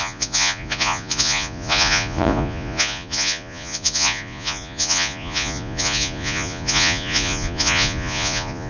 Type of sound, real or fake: fake